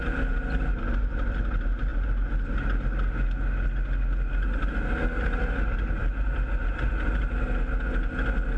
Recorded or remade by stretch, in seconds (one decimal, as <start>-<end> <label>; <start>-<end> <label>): 0.0-8.6 recorded